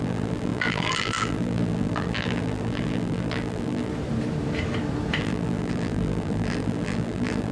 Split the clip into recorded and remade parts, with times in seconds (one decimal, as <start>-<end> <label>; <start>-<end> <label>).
0.0-3.9 remade; 3.9-5.2 recorded; 5.2-7.5 remade